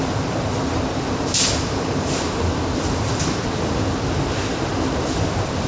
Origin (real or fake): real